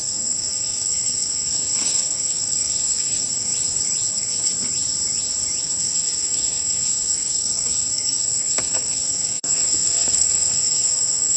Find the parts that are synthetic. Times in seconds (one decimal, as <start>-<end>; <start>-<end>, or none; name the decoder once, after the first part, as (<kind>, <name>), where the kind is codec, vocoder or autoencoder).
0.0-3.5 (codec, SNAC); 4.1-4.5; 5.6-11.4